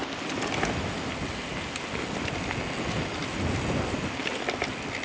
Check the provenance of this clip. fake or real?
real